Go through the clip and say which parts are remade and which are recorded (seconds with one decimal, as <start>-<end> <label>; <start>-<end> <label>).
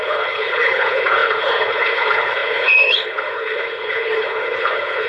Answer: 0.0-5.1 remade